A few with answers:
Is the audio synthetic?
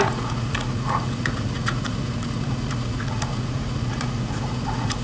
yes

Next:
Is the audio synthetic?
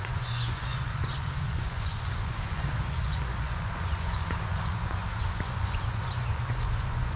yes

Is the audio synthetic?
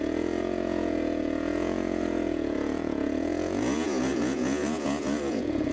yes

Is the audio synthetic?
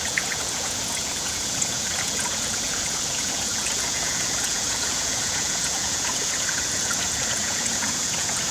yes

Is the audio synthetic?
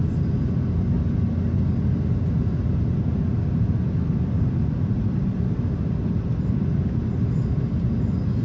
no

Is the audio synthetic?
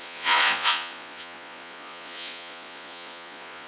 yes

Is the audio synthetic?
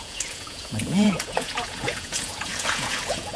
yes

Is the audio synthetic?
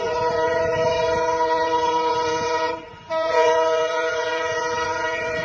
yes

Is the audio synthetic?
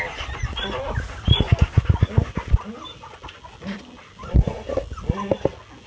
no